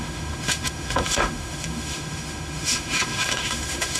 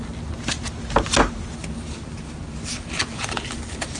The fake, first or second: first